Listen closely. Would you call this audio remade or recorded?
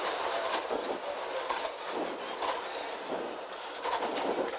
recorded